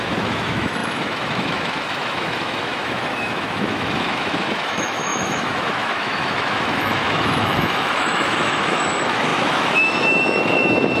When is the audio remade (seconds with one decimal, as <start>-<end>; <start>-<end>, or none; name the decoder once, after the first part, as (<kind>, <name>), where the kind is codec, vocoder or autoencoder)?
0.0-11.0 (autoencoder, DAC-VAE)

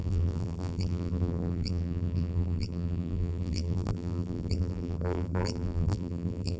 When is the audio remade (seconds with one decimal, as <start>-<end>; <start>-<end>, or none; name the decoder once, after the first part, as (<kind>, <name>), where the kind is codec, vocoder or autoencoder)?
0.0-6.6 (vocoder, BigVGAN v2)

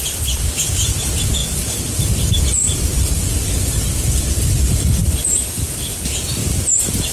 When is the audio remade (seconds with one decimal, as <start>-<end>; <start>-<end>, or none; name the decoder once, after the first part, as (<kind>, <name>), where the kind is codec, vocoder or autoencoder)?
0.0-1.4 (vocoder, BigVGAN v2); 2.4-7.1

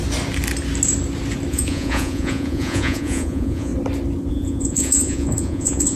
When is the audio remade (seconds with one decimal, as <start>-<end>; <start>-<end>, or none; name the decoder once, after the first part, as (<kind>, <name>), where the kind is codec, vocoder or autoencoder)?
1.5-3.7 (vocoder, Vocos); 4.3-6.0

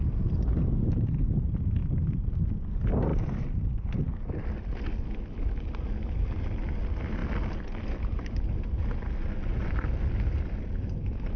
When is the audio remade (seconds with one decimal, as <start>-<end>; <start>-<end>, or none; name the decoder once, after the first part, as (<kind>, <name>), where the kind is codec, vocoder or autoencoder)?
none